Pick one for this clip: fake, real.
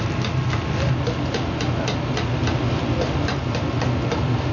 real